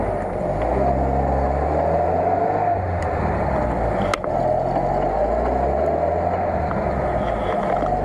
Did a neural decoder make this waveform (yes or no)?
no